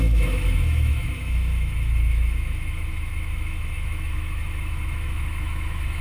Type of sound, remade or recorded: remade